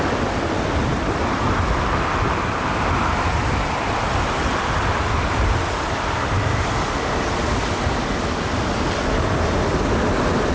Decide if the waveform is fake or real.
real